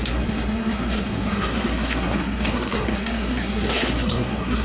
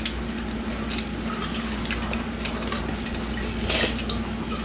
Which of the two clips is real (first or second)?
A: second